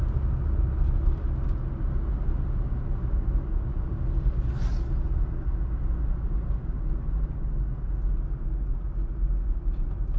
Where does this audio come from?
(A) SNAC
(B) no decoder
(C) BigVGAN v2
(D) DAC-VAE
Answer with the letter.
B